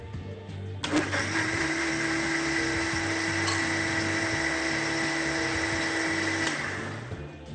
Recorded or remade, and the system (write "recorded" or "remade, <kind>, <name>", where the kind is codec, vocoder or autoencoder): recorded